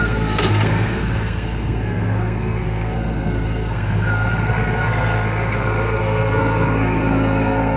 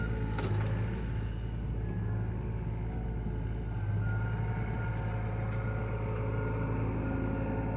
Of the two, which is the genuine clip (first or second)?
second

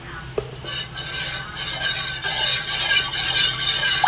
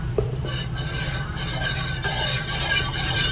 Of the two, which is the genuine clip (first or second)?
first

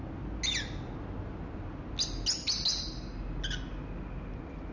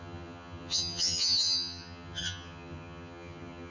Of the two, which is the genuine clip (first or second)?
first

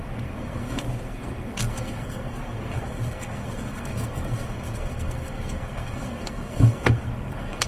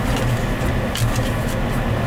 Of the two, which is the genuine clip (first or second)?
second